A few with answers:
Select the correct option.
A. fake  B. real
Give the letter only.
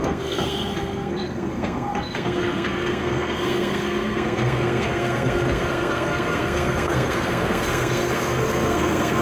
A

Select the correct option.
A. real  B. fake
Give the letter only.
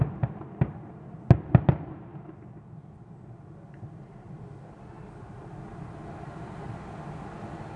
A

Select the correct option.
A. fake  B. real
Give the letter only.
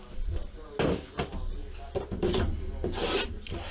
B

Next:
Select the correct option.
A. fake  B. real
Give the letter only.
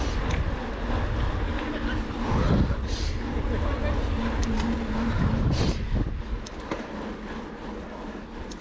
B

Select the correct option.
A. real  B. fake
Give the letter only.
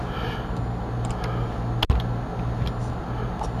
A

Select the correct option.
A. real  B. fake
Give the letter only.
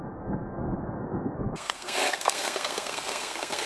B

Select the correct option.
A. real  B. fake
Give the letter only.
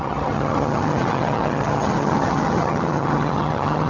B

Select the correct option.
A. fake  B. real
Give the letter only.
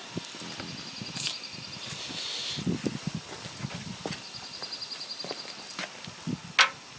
B